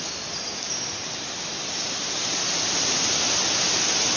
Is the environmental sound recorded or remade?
recorded